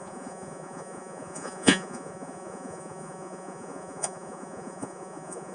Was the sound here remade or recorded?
remade